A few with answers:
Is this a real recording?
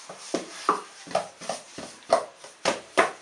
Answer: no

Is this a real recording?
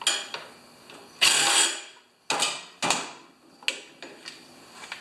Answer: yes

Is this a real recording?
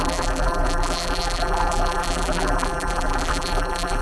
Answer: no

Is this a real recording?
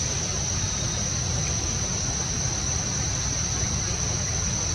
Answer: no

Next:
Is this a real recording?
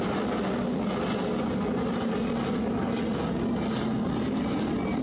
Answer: yes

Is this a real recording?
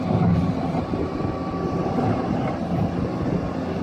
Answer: yes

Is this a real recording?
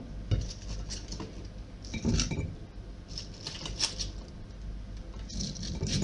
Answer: yes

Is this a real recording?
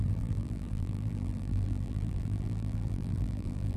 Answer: no